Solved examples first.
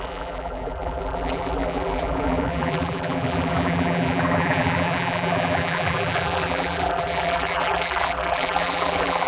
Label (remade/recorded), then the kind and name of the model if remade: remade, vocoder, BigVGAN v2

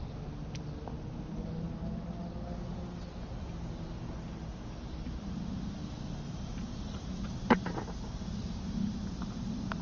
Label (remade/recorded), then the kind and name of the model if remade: recorded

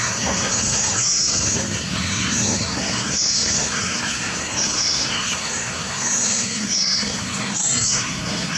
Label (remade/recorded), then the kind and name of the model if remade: remade, codec, SNAC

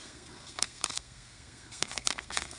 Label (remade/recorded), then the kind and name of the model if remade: remade, codec, SNAC